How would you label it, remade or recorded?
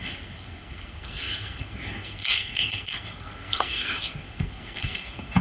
remade